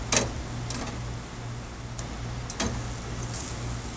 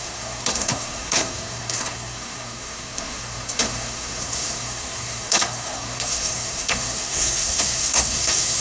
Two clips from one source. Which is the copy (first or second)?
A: second